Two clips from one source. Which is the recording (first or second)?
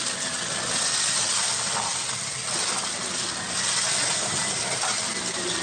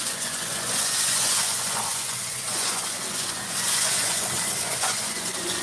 first